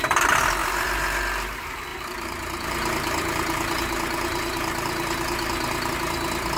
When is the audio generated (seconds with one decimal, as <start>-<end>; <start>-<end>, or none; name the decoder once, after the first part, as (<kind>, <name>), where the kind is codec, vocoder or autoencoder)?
0.6-1.2 (vocoder, BigVGAN v2); 1.9-5.9